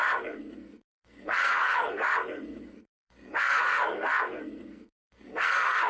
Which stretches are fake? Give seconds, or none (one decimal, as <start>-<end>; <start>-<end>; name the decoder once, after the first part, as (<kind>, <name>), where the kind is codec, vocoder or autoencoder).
0.0-5.9 (codec, SNAC)